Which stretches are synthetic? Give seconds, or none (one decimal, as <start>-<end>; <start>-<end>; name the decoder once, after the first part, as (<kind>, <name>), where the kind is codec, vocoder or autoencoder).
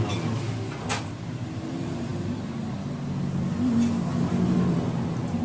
none